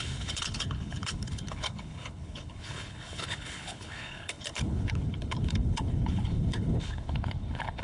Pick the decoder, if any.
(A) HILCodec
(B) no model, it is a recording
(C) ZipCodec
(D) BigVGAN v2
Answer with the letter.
A